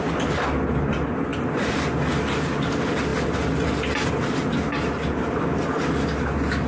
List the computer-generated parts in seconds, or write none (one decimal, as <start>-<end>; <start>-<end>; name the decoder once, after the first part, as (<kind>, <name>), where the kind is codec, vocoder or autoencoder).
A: none